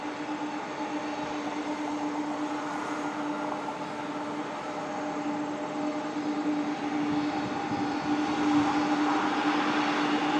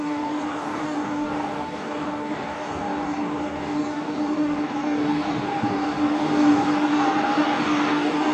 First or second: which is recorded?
first